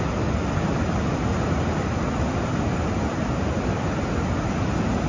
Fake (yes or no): no